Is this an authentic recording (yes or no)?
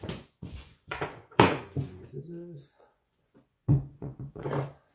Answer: no